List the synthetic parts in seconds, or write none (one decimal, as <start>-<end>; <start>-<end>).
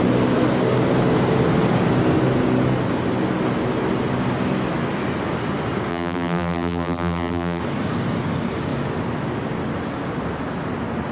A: 5.9-7.6